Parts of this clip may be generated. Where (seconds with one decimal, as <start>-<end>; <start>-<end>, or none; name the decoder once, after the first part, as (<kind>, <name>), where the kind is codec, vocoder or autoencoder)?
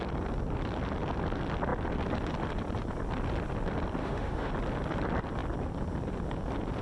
4.0-4.5 (autoencoder, DAC-VAE)